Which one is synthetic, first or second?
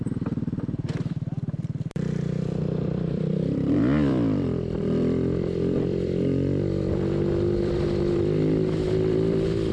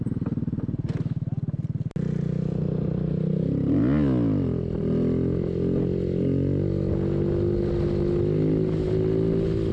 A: first